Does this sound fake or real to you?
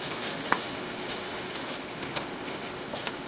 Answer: fake